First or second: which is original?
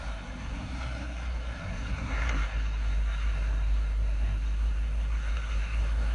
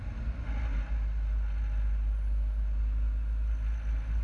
second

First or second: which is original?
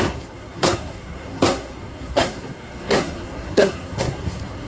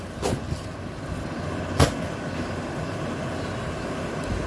second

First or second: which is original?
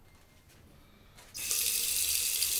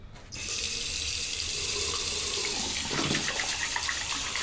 first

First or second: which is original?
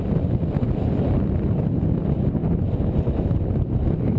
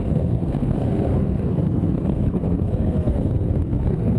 first